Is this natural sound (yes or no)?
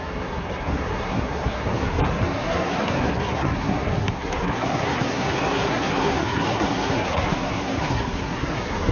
no